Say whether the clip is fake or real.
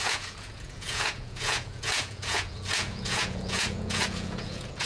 fake